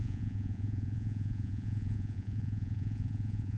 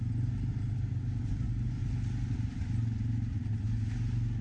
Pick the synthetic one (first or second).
first